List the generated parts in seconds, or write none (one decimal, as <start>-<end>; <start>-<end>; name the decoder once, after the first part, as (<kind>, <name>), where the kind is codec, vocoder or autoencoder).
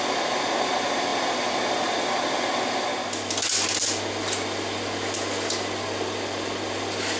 none